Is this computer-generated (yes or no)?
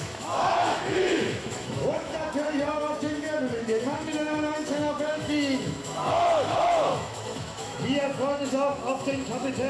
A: yes